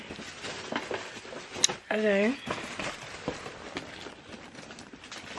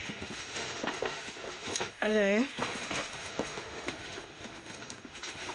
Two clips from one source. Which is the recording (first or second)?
first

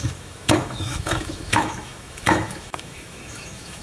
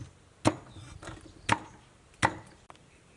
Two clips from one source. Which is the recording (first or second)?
second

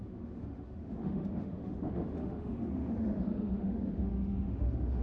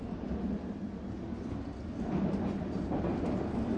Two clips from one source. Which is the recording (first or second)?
second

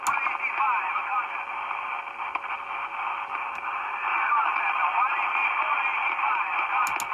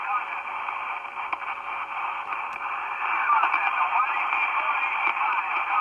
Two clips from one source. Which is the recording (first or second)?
first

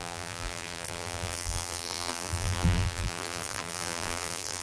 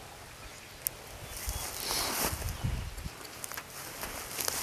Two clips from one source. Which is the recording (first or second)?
second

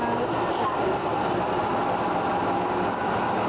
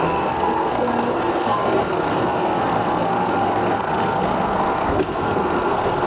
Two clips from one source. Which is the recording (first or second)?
first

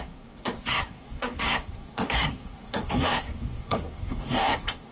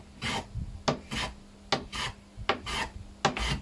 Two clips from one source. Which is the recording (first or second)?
second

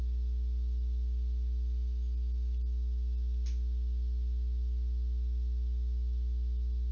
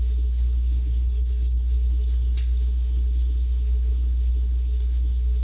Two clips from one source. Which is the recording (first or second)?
first